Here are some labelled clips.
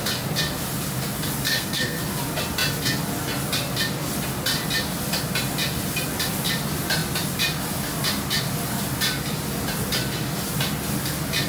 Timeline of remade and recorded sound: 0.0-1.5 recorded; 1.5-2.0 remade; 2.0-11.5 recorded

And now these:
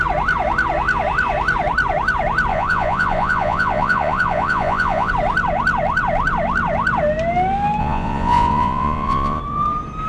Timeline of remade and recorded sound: 0.0-2.5 recorded; 2.5-5.1 remade; 5.1-7.8 recorded; 7.8-9.4 remade; 9.4-10.1 recorded

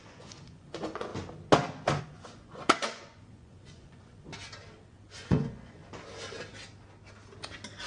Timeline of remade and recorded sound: 0.0-1.1 remade; 1.1-2.0 recorded; 2.0-4.3 remade; 4.3-4.9 recorded; 4.9-5.8 remade; 5.8-7.9 recorded

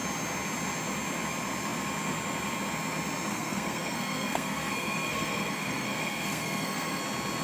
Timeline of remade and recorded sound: 0.0-3.3 recorded; 3.3-7.0 remade; 7.0-7.4 recorded